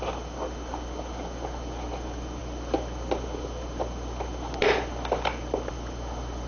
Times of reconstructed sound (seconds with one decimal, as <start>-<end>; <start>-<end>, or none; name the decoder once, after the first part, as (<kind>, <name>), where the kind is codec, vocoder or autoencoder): none